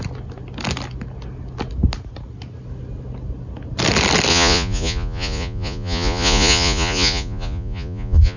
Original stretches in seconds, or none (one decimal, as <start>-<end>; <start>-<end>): 0.0-4.3